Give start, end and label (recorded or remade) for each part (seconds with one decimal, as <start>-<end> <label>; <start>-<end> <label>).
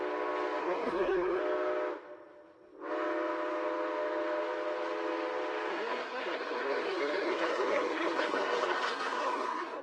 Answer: 0.0-0.6 recorded; 0.6-1.4 remade; 1.4-5.7 recorded; 5.7-9.8 remade